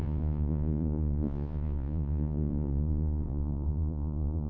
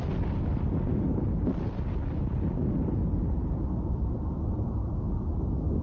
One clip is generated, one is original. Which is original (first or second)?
second